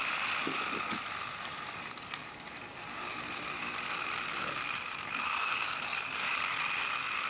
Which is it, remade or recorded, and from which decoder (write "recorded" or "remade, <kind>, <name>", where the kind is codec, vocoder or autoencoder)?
recorded